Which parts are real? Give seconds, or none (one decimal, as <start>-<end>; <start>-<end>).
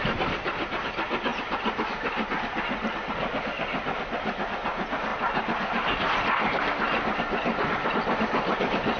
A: 0.0-9.0